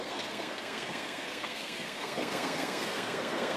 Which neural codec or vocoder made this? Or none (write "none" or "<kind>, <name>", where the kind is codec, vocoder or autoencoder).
codec, SNAC